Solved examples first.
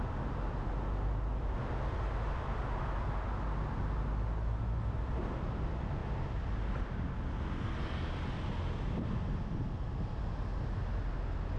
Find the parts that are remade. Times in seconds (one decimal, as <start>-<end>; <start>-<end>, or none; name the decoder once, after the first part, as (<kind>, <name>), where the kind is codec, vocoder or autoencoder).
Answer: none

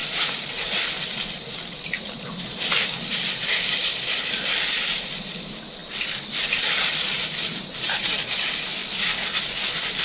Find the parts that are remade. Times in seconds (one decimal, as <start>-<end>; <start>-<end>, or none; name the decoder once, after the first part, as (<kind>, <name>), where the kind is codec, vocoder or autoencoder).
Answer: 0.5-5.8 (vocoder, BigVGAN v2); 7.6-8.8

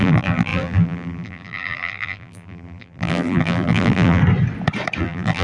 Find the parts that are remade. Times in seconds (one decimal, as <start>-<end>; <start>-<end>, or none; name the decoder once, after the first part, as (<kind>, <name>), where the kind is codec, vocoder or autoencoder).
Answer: 0.0-4.2 (vocoder, BigVGAN v2); 5.0-5.4